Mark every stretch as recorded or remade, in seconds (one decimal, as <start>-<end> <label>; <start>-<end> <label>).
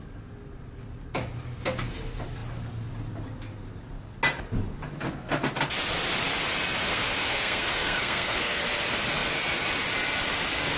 0.0-6.9 recorded; 6.9-8.6 remade; 8.6-10.8 recorded